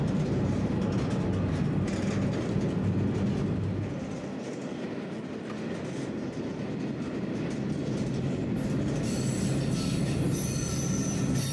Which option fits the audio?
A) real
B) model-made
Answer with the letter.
A